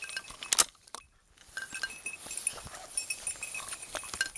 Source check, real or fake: real